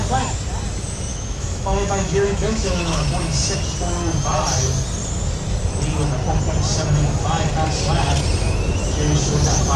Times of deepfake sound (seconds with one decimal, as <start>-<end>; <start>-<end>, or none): 1.1-3.0